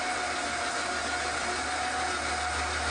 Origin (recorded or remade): recorded